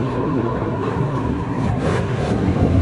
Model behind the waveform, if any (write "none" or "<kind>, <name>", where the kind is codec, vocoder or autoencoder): codec, SNAC